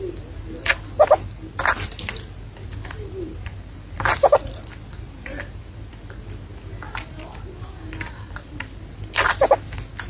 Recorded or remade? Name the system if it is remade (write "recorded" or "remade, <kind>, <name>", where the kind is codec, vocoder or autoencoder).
recorded